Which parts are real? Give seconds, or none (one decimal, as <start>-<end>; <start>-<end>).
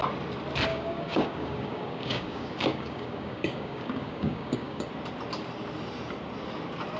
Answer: 0.0-0.7; 4.9-7.0